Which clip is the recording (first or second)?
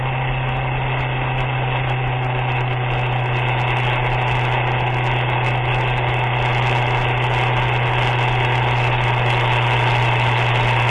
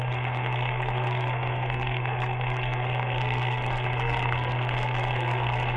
first